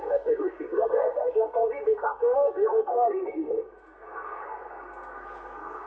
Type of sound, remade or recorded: remade